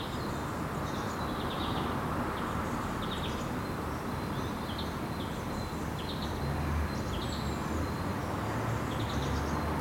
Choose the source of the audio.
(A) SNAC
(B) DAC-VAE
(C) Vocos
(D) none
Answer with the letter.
D